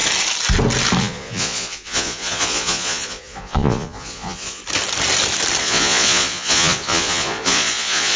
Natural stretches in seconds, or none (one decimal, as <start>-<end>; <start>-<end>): 0.0-1.0; 4.6-5.6

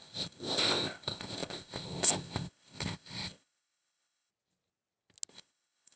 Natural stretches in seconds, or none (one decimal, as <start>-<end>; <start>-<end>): 4.3-5.3

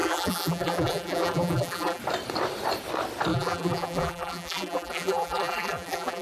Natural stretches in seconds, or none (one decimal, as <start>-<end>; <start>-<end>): 2.0-3.3

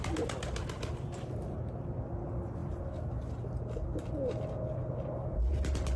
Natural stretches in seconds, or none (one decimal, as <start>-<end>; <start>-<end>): 0.0-6.0